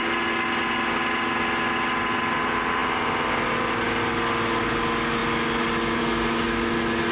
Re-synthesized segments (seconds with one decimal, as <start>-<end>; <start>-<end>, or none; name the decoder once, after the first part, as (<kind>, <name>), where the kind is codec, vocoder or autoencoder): none